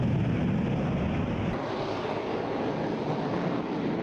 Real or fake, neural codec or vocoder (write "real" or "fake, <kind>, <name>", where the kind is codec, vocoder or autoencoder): real